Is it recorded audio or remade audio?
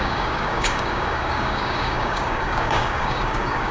remade